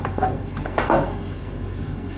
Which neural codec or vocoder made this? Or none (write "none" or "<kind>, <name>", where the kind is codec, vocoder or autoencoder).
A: codec, SNAC